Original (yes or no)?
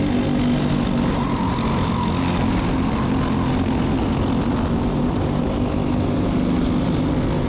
yes